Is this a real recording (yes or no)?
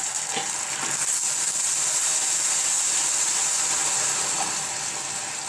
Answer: yes